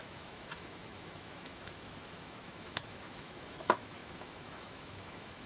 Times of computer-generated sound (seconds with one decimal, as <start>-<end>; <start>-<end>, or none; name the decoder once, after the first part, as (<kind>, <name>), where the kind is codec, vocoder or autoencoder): 0.0-5.5 (autoencoder, DAC-VAE)